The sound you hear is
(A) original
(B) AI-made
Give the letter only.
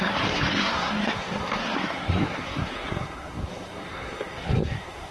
B